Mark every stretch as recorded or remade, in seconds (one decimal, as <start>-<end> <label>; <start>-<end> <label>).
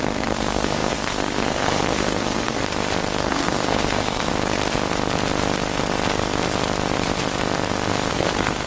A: 0.0-2.6 remade; 2.6-3.2 recorded; 3.2-4.3 remade; 4.3-8.1 recorded; 8.1-8.7 remade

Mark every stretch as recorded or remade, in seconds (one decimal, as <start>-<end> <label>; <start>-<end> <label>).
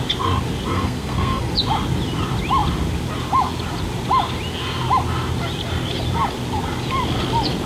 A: 0.0-0.7 recorded; 0.7-1.5 remade; 1.5-7.7 recorded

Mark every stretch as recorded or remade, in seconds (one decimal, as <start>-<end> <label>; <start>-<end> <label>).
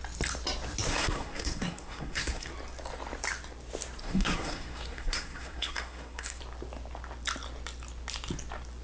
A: 0.0-0.9 recorded; 0.9-2.5 remade; 2.5-4.0 recorded; 4.0-6.4 remade; 6.4-8.8 recorded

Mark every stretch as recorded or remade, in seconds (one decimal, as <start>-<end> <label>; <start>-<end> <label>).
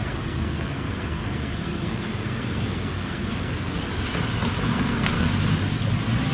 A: 0.0-3.8 remade; 3.8-4.7 recorded; 4.7-5.3 remade; 5.3-6.3 recorded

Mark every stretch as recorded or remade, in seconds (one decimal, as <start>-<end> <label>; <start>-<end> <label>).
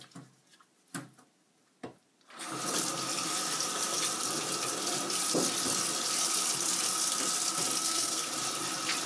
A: 0.0-7.8 recorded; 7.8-8.3 remade; 8.3-9.1 recorded